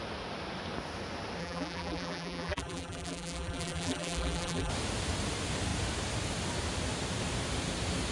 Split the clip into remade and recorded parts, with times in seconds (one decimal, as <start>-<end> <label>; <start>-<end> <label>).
0.0-1.4 recorded; 1.4-4.7 remade; 4.7-8.1 recorded